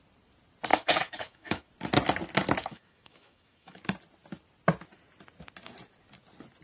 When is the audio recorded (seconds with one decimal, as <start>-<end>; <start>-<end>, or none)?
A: 0.0-0.7; 1.7-2.6; 3.8-6.6